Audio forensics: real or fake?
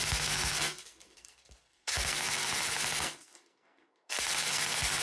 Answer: fake